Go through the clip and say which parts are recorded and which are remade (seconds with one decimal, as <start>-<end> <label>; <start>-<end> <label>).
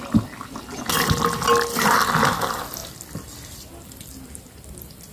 0.0-5.1 recorded